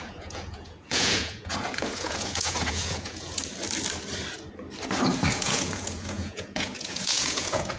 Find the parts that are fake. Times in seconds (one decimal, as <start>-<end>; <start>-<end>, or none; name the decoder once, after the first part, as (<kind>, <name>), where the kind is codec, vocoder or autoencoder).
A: 0.0-3.4 (vocoder, Vocos); 5.3-7.8